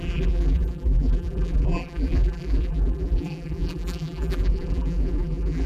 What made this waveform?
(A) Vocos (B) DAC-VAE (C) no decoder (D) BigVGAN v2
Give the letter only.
D